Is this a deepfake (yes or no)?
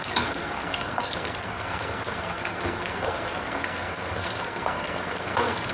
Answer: yes